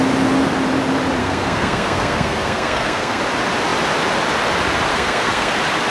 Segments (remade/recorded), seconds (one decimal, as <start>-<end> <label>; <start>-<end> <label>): 0.0-1.2 recorded; 1.2-3.2 remade; 3.2-4.9 recorded; 4.9-5.5 remade; 5.5-5.9 recorded